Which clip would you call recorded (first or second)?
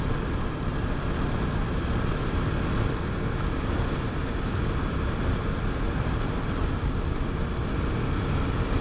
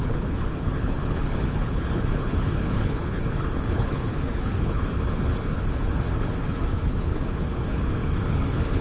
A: first